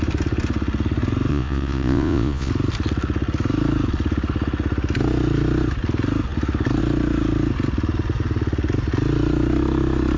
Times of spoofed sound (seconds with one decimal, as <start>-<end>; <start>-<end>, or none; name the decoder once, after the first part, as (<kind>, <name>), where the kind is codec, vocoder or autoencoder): 1.3-2.5 (vocoder, Vocos)